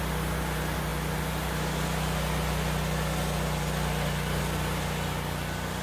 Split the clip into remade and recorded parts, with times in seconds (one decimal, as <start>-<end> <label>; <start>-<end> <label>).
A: 0.0-5.8 recorded